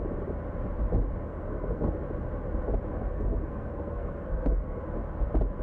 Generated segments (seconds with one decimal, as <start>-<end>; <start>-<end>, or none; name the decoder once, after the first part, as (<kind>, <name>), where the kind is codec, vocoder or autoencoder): 1.3-1.9 (codec, SNAC); 2.9-4.8